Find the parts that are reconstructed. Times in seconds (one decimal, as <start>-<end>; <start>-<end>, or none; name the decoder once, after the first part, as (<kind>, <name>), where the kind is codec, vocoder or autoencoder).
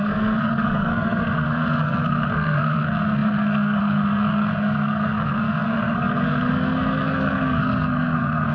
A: 0.0-8.5 (codec, SNAC)